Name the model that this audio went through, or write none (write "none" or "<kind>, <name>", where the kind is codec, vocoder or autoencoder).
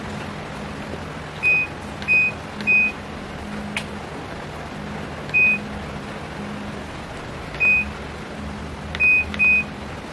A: none